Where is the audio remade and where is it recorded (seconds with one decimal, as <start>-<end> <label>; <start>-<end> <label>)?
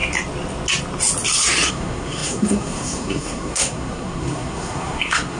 0.0-1.7 recorded; 1.7-5.4 remade